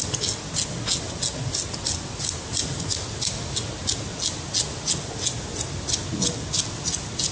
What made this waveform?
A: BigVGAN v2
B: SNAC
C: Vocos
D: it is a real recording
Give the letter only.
D